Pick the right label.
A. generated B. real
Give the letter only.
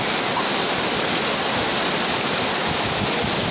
B